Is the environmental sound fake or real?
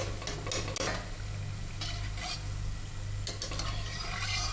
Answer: real